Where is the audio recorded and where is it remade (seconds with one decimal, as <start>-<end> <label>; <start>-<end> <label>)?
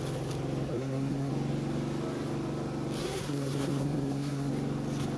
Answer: 0.0-0.7 recorded; 0.7-1.3 remade; 1.3-3.0 recorded; 3.0-4.5 remade; 4.5-5.2 recorded